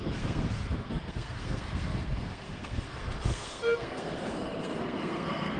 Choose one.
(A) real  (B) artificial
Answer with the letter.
B